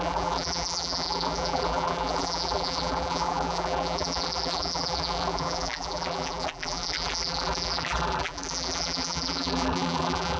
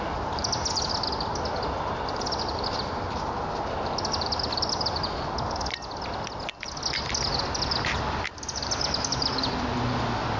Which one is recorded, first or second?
second